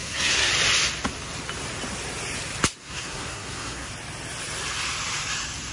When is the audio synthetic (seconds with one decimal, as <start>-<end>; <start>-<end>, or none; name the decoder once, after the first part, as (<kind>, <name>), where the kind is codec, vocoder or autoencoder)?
0.0-0.5 (codec, SNAC); 2.8-3.9